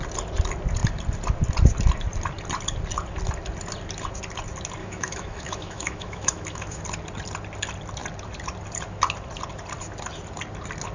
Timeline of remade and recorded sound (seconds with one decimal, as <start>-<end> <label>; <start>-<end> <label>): 0.0-4.8 recorded; 4.8-6.8 remade; 6.8-10.9 recorded

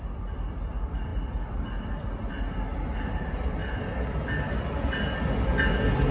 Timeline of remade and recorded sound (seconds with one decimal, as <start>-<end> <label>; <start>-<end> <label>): 0.0-6.1 recorded

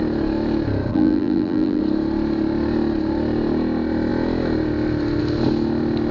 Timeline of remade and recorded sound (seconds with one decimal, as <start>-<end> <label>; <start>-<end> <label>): 0.0-0.9 recorded; 0.9-1.8 remade; 1.8-6.1 recorded

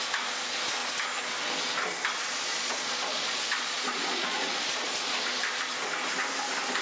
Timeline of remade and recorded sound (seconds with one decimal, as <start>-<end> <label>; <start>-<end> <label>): 0.0-2.5 recorded; 2.5-4.6 remade; 4.6-6.8 recorded

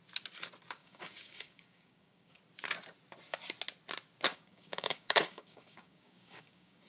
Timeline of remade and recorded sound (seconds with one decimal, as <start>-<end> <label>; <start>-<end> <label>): 0.0-0.8 recorded; 0.8-2.4 remade; 2.4-4.3 recorded; 4.3-6.9 remade

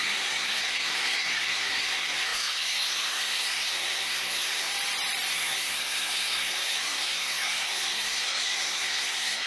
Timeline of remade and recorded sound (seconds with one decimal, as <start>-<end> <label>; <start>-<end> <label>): 0.0-4.7 remade; 4.7-5.3 recorded; 5.3-9.5 remade

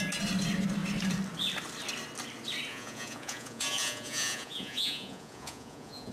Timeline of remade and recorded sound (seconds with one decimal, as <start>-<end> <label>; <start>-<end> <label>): 0.0-2.7 recorded; 2.7-6.1 remade